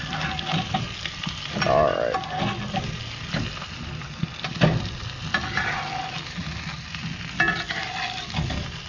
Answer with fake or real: real